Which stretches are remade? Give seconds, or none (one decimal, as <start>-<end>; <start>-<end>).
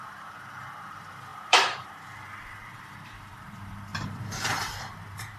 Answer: 0.0-3.9; 4.5-5.4